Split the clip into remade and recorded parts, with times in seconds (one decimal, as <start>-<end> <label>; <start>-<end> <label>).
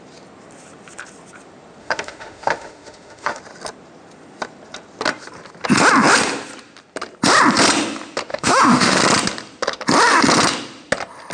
0.0-1.8 recorded; 1.8-3.4 remade; 3.4-8.3 recorded; 8.3-9.0 remade; 9.0-11.3 recorded